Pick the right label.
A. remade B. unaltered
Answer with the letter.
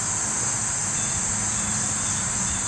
B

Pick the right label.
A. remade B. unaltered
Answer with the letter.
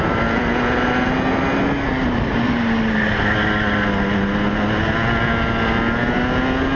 B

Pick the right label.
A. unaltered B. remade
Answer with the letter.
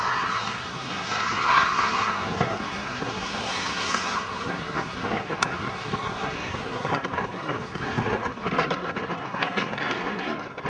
B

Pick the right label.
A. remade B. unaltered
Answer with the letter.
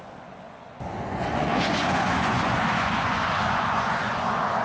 A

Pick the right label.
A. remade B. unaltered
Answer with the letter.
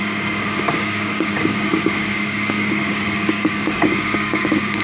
A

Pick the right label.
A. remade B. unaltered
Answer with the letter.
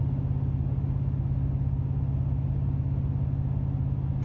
B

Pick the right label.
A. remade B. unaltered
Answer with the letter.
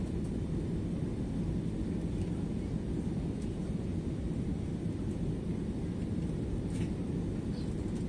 B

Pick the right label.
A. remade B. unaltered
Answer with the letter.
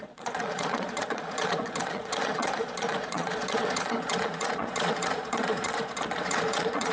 A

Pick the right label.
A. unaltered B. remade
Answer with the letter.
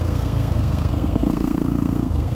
B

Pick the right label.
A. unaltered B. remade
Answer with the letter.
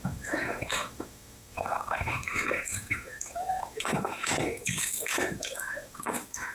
B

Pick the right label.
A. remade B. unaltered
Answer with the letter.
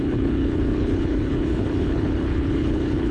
A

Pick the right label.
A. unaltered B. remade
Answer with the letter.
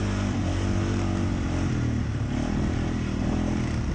A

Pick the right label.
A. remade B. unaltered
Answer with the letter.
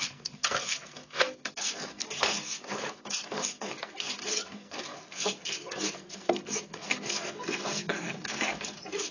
A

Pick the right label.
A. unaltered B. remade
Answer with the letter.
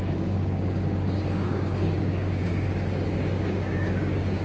B